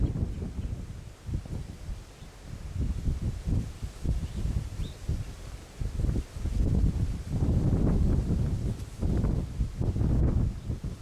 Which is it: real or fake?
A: real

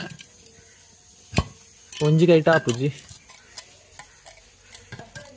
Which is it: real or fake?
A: real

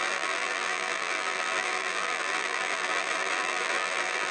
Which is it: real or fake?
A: fake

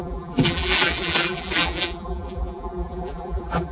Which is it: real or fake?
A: fake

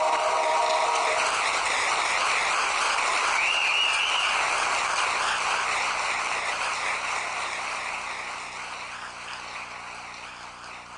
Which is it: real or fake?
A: real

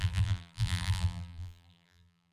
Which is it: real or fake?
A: fake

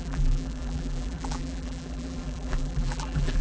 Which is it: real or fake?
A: fake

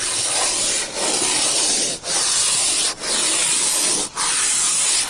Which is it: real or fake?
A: real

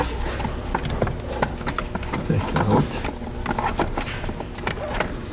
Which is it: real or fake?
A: real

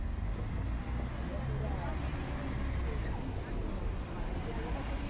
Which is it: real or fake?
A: real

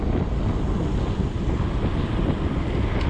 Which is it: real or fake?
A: real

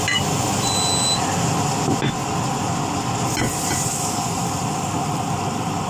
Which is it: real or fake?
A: real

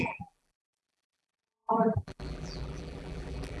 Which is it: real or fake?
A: fake